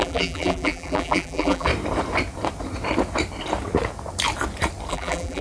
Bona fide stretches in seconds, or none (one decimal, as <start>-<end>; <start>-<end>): 1.7-4.9